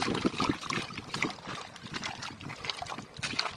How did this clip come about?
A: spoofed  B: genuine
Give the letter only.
B